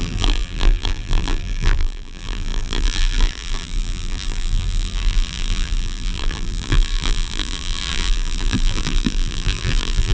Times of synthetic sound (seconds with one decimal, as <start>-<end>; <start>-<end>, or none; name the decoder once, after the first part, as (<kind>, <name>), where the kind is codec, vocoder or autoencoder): 0.0-10.1 (vocoder, BigVGAN v2)

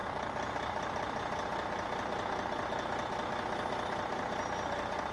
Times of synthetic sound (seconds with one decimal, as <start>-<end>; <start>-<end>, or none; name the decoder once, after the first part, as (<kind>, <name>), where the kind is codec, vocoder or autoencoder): 0.0-1.2 (vocoder, BigVGAN v2)

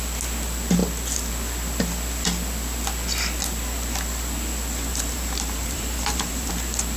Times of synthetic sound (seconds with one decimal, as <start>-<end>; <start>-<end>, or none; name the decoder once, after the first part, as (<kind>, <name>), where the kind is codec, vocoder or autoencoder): 4.9-6.5 (vocoder, BigVGAN v2)

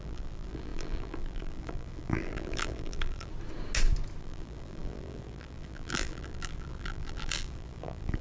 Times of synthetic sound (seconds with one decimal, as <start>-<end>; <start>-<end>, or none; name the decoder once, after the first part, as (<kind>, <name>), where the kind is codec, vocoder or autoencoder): 0.0-3.3 (vocoder, BigVGAN v2); 4.2-8.2